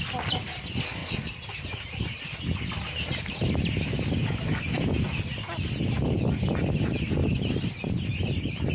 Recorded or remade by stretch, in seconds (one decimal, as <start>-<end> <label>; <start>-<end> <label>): 0.0-8.7 recorded